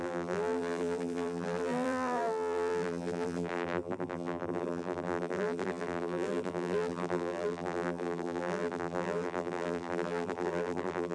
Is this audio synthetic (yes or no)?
yes